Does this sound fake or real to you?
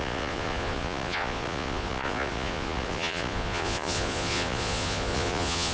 fake